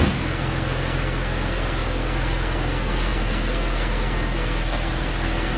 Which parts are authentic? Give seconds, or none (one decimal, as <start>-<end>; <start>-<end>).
none

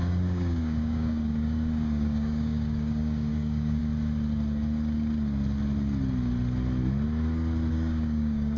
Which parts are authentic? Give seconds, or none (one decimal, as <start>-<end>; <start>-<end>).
3.8-7.7

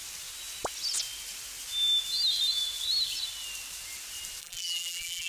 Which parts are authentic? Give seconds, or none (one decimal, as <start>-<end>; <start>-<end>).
0.0-4.4

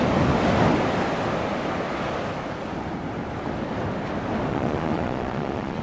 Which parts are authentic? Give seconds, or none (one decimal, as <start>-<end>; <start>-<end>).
0.0-4.5

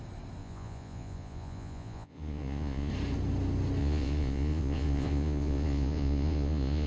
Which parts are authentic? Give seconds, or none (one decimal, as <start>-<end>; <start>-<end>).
0.0-0.4; 2.9-3.8

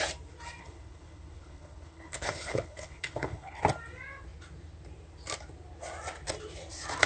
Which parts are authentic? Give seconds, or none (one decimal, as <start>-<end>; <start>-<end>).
0.0-0.6; 3.6-7.1